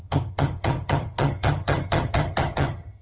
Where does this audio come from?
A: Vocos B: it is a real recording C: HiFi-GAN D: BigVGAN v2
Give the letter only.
C